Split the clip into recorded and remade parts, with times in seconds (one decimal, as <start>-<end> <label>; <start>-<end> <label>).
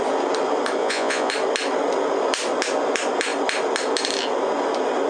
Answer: 0.0-0.8 recorded; 0.8-1.3 remade; 1.3-5.1 recorded